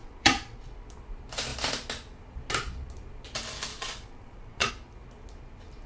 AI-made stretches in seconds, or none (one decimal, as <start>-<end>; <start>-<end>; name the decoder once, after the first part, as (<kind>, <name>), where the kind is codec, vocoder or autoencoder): 0.0-0.6 (vocoder, Vocos); 3.7-4.7